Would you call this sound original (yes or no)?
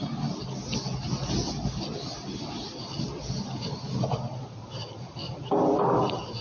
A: yes